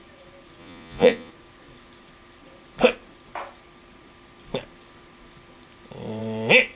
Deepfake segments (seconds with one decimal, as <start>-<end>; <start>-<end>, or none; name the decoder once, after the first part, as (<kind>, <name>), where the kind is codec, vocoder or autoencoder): 0.6-1.3 (vocoder, Vocos)